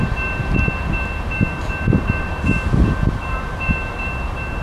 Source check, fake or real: fake